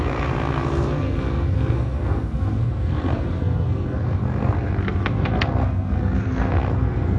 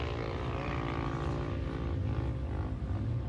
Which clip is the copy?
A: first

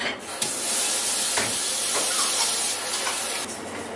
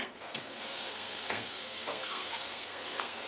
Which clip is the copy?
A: second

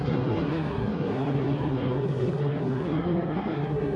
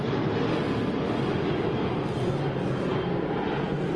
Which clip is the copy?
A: first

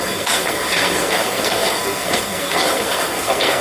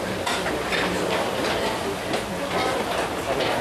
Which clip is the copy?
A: first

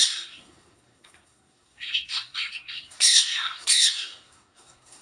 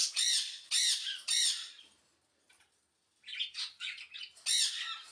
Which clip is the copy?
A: first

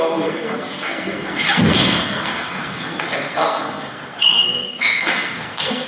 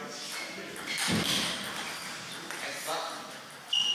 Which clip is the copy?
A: first